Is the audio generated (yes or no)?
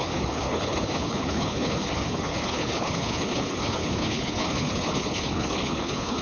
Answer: yes